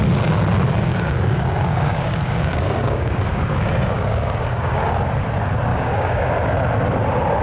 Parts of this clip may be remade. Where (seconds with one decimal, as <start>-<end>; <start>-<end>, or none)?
0.9-4.9; 5.7-6.3